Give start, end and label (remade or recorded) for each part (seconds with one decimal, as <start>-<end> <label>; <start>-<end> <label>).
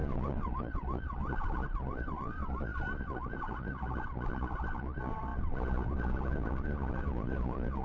0.0-7.8 remade